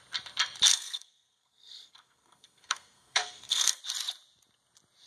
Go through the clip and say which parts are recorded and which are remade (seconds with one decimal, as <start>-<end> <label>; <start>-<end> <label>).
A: 0.0-0.7 recorded; 0.7-3.8 remade; 3.8-5.1 recorded